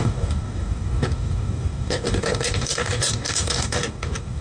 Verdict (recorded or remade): remade